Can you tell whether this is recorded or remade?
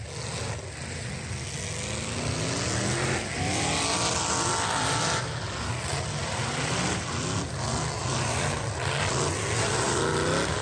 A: recorded